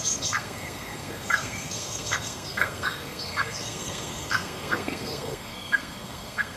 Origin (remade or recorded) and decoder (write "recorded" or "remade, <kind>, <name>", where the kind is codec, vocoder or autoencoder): remade, codec, SNAC